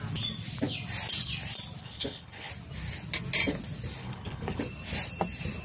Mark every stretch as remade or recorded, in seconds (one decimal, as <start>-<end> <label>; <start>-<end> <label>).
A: 0.0-1.8 recorded; 1.8-2.5 remade; 2.5-4.0 recorded; 4.0-4.6 remade; 4.6-5.6 recorded